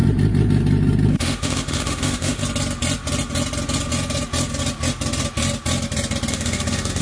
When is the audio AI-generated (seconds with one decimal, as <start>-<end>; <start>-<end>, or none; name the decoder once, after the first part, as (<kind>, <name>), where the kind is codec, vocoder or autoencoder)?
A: 1.1-2.4 (autoencoder, DAC-VAE); 6.3-7.0